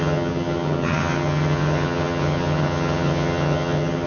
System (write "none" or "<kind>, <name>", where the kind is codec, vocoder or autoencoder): vocoder, HiFi-GAN